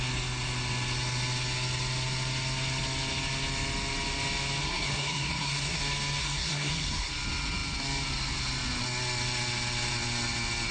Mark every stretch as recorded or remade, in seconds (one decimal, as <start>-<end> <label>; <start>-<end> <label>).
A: 0.0-4.6 recorded; 4.6-5.8 remade; 5.8-6.2 recorded; 6.2-7.1 remade; 7.1-10.7 recorded